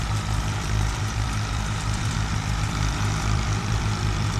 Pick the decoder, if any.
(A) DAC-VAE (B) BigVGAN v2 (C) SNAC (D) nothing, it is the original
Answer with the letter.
B